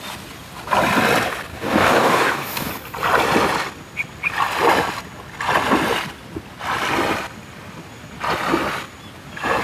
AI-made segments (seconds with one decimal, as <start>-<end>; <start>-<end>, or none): 1.5-2.7